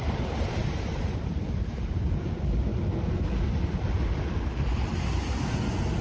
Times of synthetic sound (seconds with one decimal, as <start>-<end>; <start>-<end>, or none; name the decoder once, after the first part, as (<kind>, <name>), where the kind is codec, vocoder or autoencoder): none